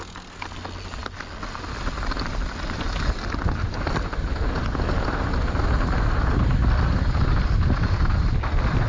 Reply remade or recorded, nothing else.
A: recorded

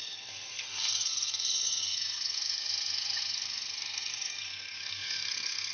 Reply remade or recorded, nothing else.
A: remade